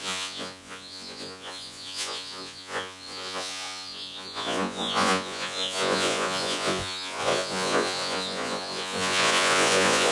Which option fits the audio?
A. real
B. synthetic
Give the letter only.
B